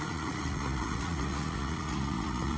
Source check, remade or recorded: remade